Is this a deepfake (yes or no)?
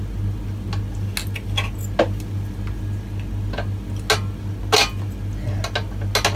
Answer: no